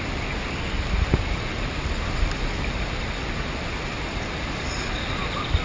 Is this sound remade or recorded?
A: recorded